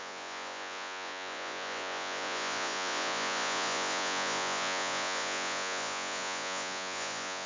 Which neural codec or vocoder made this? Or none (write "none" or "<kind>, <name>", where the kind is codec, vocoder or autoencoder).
vocoder, Vocos